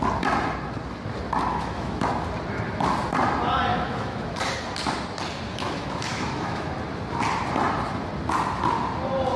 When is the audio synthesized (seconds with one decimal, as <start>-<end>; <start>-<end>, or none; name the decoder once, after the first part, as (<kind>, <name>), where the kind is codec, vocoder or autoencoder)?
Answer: 1.5-2.1 (autoencoder, DAC-VAE); 3.7-4.4; 5.5-6.7